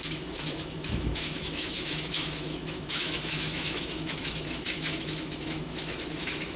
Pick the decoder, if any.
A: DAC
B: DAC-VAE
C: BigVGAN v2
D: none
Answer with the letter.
B